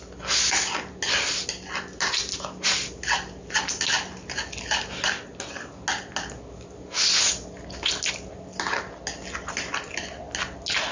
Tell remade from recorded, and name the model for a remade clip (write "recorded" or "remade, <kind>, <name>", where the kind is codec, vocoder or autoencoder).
recorded